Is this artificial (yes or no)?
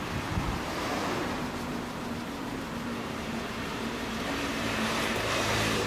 yes